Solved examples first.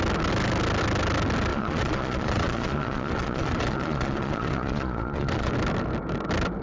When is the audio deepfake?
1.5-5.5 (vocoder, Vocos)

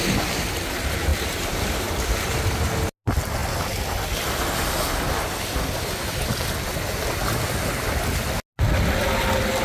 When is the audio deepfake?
none